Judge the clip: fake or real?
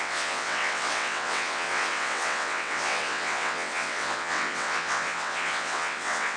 fake